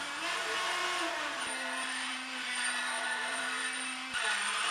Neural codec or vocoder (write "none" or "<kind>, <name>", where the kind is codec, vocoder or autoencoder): vocoder, BigVGAN v2